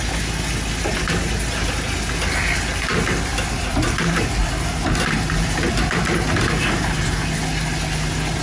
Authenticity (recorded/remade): recorded